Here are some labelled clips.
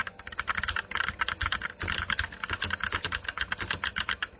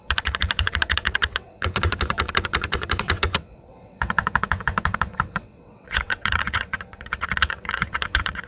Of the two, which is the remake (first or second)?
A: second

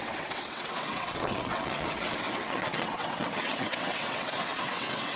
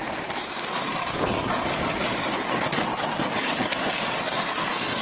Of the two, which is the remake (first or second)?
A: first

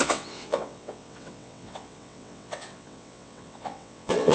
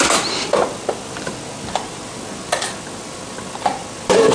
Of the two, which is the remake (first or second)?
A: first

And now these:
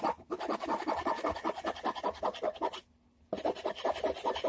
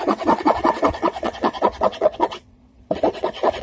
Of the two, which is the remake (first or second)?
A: second